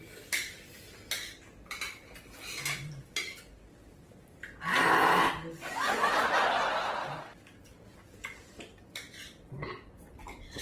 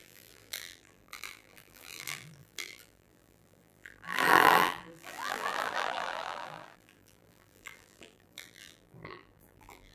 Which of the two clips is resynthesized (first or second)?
second